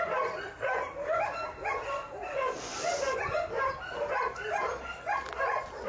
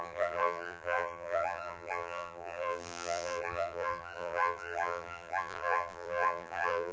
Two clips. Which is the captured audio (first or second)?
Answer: first